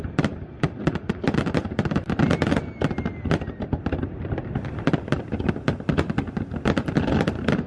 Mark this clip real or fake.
real